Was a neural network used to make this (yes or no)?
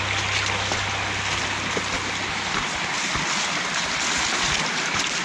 no